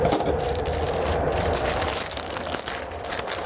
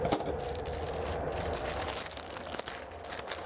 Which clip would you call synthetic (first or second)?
first